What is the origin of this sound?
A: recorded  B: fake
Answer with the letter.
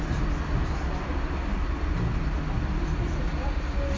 A